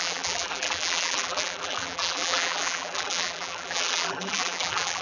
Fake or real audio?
fake